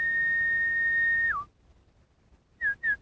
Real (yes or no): yes